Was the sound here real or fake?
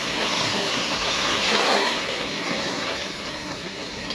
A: fake